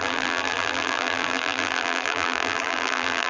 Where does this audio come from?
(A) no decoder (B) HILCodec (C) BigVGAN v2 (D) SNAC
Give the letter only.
C